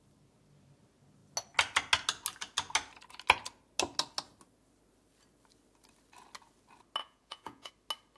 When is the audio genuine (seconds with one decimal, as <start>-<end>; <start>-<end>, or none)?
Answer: 0.0-7.0; 7.7-8.2